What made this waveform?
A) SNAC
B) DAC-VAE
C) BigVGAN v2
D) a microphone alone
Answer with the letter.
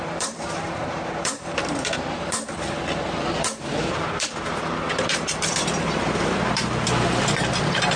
C